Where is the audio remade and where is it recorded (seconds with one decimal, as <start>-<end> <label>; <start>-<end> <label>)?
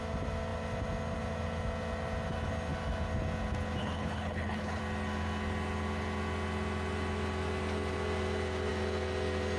0.0-3.8 recorded; 3.8-4.8 remade; 4.8-9.6 recorded